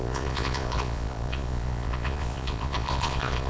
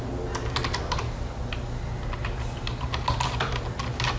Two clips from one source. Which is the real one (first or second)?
second